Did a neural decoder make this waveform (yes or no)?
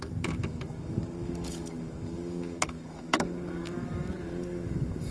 yes